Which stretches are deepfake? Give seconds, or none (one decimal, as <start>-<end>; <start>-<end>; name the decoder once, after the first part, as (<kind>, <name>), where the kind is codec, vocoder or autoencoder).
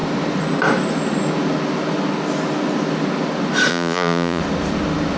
3.7-4.4 (vocoder, Vocos)